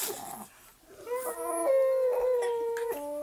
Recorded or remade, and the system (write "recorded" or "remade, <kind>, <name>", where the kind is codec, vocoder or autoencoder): recorded